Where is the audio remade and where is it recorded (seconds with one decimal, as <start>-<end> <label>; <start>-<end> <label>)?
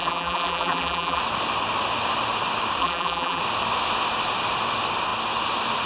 0.0-1.2 remade; 1.2-2.8 recorded; 2.8-3.4 remade; 3.4-5.9 recorded